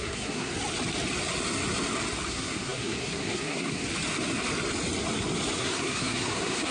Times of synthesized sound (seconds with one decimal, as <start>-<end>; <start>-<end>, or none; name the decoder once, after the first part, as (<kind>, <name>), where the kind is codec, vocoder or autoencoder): 0.0-0.5 (codec, SNAC); 2.3-3.8; 5.6-6.7